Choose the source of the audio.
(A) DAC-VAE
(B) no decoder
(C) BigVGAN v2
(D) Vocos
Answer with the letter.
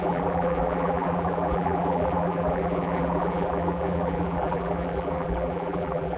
C